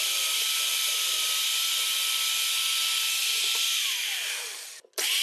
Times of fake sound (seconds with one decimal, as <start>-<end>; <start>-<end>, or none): 0.0-1.7